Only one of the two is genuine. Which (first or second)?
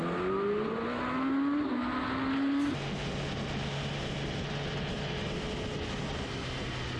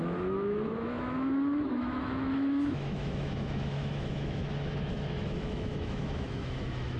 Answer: first